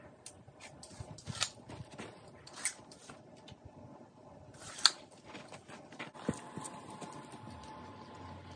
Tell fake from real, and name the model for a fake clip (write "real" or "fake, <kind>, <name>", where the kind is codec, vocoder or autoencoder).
real